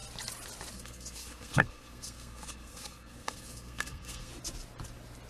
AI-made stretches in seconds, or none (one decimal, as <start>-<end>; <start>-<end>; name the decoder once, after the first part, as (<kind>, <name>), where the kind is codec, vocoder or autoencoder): 0.7-4.3 (codec, SNAC)